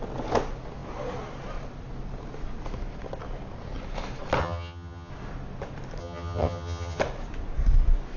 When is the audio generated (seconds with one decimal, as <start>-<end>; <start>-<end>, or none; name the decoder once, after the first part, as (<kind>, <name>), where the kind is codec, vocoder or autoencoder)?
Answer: 4.4-5.1 (vocoder, HiFi-GAN); 6.0-7.0